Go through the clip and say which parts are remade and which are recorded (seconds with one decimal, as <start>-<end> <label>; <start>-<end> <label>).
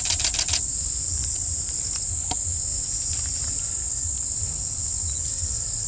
0.0-2.7 recorded; 2.7-3.5 remade; 3.5-5.9 recorded